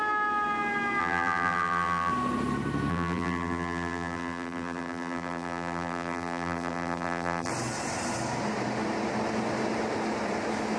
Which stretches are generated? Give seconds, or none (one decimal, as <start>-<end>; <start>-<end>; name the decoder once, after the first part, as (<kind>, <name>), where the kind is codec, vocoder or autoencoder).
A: 1.0-2.1 (vocoder, BigVGAN v2); 2.9-7.5